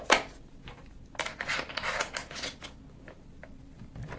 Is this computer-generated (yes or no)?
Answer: no